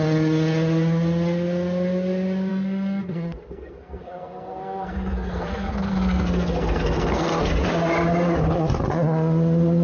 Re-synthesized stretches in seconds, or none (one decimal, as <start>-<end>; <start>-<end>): 2.5-7.5